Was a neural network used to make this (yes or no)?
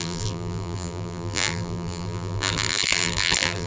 yes